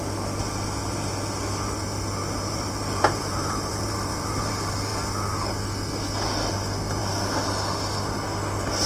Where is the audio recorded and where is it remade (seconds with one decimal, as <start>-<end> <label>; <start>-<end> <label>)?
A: 0.0-2.2 recorded; 2.2-4.5 remade; 4.5-8.9 recorded